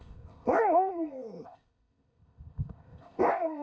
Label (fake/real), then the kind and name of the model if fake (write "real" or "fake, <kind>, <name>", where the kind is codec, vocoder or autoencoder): fake, codec, ZipCodec